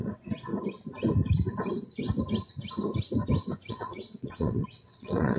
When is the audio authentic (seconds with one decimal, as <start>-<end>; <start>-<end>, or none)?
0.5-3.7